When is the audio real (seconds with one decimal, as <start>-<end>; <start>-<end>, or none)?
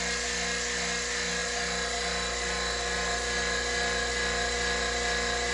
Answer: 0.0-5.5